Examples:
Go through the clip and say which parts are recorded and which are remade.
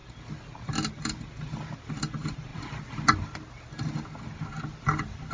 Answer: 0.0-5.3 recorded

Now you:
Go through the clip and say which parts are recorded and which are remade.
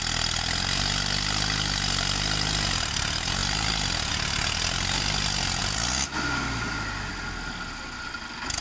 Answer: 0.0-8.6 recorded